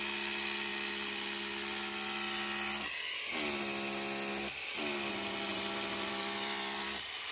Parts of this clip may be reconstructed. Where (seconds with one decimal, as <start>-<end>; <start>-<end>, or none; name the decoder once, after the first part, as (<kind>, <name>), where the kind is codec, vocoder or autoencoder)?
5.5-7.3 (vocoder, BigVGAN v2)